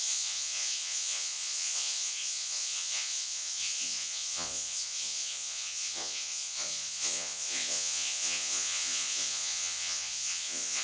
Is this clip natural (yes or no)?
no